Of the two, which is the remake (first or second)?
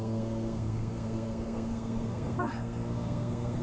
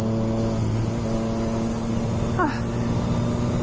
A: first